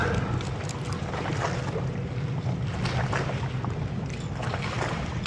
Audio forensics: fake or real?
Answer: real